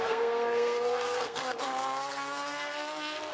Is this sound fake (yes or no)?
yes